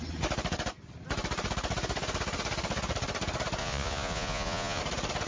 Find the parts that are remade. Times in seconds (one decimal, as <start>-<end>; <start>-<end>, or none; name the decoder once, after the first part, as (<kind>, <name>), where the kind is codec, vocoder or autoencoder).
3.6-4.8 (vocoder, Vocos)